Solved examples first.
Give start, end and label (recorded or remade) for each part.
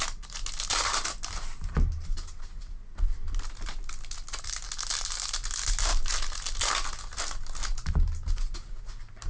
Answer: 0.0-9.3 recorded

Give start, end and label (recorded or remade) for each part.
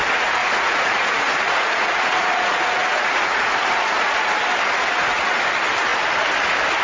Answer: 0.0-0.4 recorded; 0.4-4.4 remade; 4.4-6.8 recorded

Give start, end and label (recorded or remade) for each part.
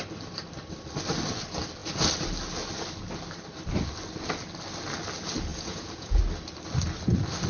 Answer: 0.0-5.5 recorded; 5.5-6.2 remade; 6.2-7.5 recorded